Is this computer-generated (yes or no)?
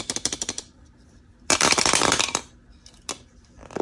yes